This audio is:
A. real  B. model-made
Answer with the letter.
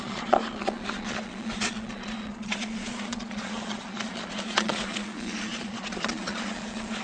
B